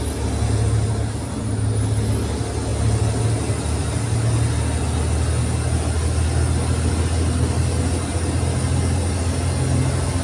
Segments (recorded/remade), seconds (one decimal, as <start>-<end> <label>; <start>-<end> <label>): 0.0-10.2 recorded